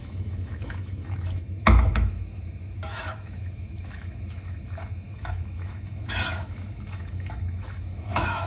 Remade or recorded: remade